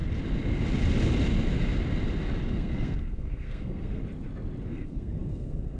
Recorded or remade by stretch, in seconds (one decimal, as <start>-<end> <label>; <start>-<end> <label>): 0.0-2.5 recorded; 2.5-4.0 remade; 4.0-4.7 recorded; 4.7-5.8 remade